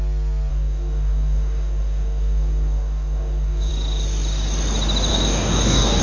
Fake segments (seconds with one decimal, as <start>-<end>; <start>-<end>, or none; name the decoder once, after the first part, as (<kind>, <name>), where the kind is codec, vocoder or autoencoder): 0.5-3.7 (codec, DAC); 5.1-6.0